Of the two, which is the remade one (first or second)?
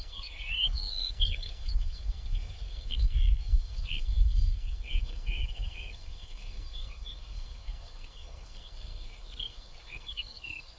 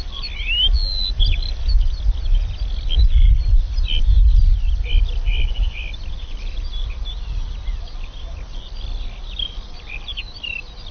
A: first